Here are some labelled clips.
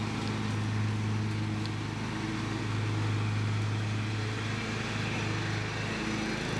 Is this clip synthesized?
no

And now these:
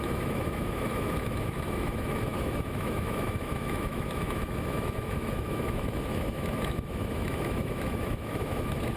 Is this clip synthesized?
yes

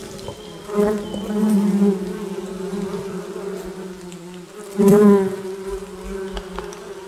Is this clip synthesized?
no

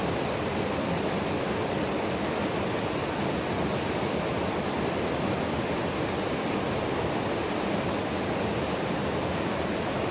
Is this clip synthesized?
no